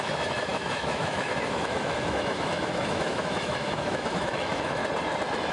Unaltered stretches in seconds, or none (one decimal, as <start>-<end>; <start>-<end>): 4.8-5.5